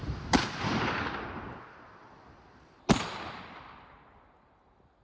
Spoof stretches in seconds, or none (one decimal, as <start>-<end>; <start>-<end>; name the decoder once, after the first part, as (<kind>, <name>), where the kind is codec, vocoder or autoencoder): none